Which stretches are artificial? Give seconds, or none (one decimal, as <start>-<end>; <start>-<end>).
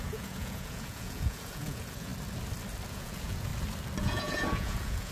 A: 0.0-2.1; 2.9-3.5; 4.0-5.1